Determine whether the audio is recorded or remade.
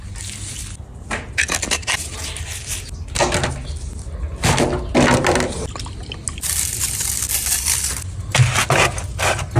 recorded